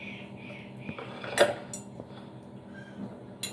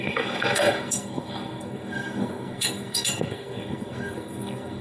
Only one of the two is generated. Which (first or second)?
second